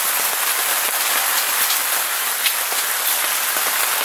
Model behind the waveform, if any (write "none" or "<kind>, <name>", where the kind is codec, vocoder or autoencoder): none